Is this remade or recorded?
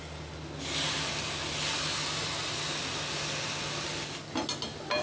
recorded